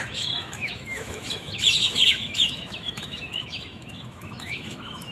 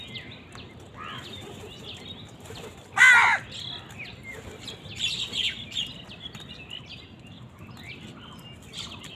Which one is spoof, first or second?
first